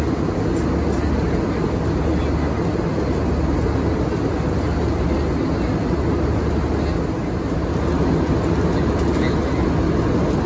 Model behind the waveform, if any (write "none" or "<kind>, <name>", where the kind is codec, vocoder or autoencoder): none